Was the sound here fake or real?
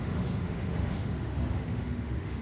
fake